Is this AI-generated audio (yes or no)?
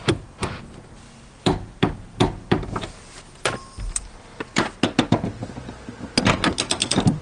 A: no